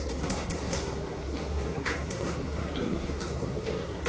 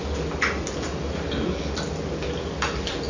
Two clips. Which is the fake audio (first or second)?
first